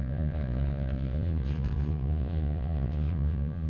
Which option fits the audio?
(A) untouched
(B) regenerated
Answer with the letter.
B